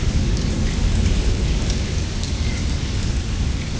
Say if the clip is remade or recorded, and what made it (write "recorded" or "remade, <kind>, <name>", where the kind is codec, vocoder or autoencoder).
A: remade, codec, DAC